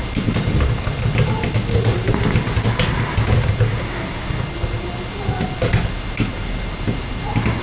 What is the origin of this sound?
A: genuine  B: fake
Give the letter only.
A